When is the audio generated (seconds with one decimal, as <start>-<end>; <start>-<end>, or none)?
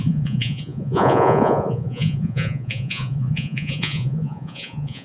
0.0-5.0